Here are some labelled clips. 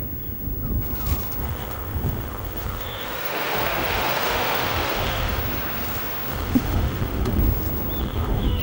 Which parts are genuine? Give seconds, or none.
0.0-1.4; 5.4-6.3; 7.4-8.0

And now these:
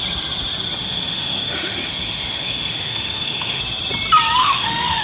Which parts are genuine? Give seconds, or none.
0.0-0.8; 3.6-4.4

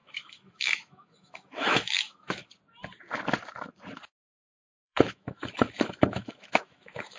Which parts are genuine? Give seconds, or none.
2.4-4.5

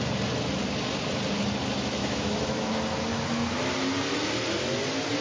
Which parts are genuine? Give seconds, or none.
0.0-2.0; 2.7-3.1; 3.7-5.2

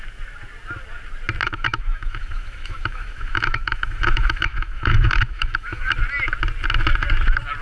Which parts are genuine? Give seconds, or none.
0.0-1.4; 5.9-7.6